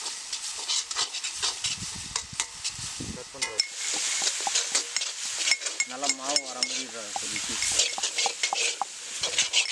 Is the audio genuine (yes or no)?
yes